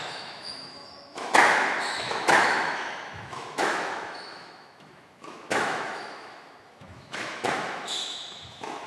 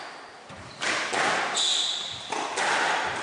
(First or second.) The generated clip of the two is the first